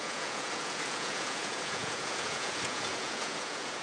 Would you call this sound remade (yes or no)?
yes